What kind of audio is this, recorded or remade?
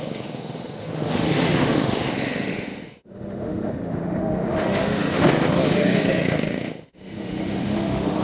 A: remade